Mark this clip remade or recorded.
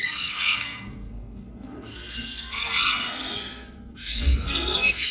remade